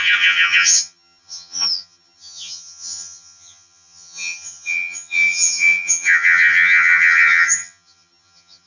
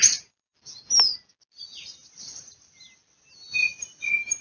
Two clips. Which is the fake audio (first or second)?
first